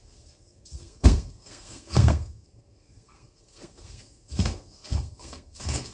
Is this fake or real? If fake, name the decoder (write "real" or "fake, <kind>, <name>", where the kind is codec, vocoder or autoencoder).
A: fake, codec, SNAC